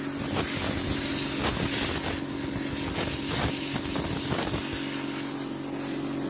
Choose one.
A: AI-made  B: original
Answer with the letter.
B